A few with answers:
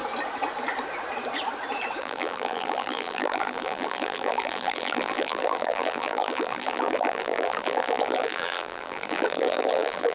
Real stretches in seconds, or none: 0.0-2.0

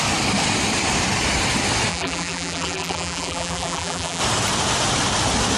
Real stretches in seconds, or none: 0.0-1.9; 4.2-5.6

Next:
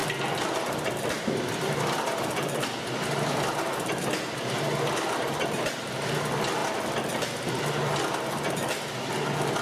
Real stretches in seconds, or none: 2.1-9.6